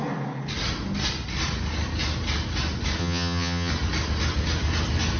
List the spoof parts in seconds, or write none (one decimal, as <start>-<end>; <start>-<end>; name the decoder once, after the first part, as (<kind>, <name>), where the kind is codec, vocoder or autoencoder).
3.0-3.7 (vocoder, HiFi-GAN)